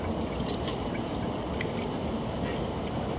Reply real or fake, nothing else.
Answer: real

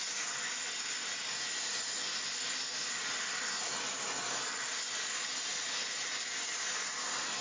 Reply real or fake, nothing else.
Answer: real